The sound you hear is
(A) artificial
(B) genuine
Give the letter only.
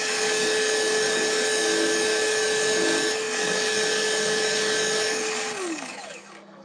A